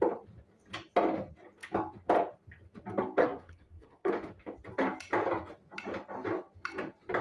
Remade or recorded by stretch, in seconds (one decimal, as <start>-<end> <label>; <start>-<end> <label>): 0.0-3.2 recorded; 3.2-4.1 remade; 4.1-7.2 recorded